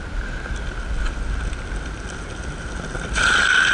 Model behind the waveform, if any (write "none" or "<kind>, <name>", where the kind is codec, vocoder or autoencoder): none